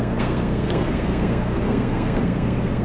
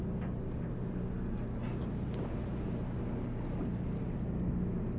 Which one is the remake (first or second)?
first